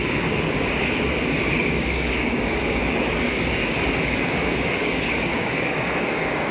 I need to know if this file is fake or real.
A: fake